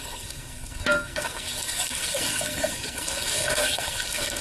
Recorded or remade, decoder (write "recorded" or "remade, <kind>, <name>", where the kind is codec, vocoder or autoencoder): remade, codec, SNAC